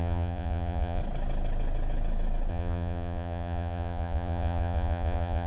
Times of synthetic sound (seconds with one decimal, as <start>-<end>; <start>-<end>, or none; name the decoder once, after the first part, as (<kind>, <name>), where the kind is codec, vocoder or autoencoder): 0.0-1.0 (vocoder, Vocos); 2.5-5.5